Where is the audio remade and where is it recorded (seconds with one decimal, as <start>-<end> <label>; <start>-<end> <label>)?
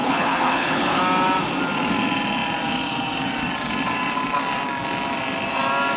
0.0-1.0 remade; 1.0-6.0 recorded